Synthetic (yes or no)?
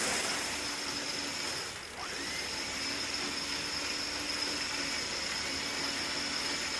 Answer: no